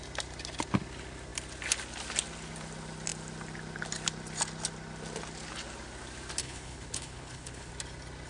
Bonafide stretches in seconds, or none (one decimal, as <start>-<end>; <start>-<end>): 0.0-6.4; 7.7-8.3